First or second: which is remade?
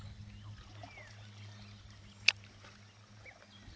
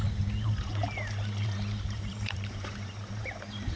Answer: second